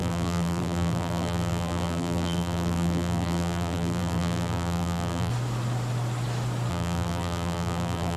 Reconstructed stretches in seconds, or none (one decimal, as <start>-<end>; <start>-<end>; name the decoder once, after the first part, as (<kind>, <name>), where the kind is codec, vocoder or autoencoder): 0.0-5.3 (vocoder, BigVGAN v2); 6.7-8.2